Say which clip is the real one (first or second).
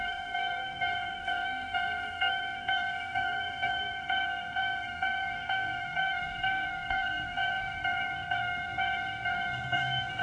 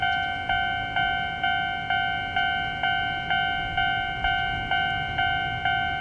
second